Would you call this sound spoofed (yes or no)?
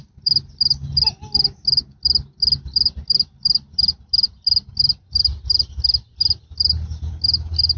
no